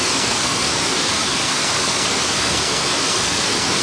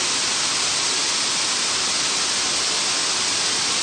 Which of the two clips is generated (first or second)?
first